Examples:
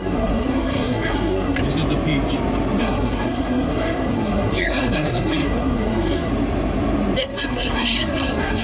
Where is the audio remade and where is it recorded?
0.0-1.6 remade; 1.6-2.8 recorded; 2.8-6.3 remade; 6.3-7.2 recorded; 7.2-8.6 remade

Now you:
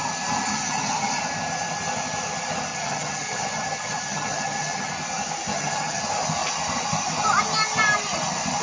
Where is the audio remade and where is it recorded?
0.0-0.4 recorded; 0.4-1.2 remade; 1.2-2.7 recorded; 2.7-4.9 remade; 4.9-5.5 recorded; 5.5-6.0 remade; 6.0-8.6 recorded

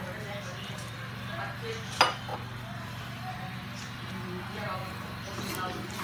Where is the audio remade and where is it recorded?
0.0-4.8 recorded; 4.8-5.4 remade; 5.4-6.0 recorded